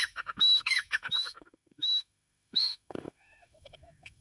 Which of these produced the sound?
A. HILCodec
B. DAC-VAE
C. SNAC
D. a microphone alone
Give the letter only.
B